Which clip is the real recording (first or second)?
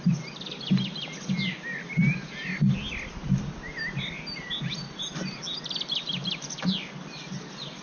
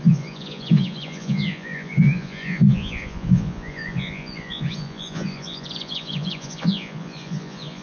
first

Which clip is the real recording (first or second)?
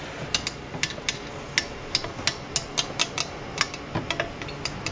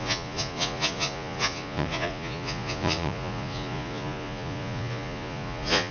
first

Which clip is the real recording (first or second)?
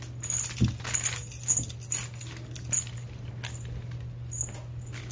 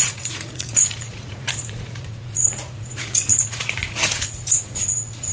first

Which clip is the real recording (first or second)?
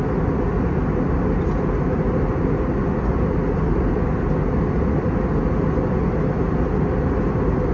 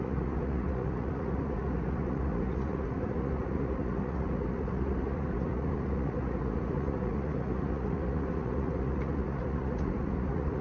first